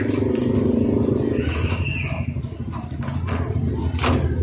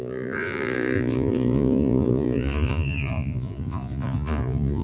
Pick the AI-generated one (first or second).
second